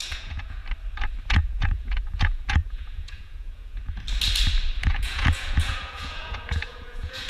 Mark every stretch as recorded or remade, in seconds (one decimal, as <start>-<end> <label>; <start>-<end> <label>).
0.0-0.6 remade; 0.6-1.3 recorded; 1.3-3.8 remade; 3.8-4.8 recorded; 4.8-7.3 remade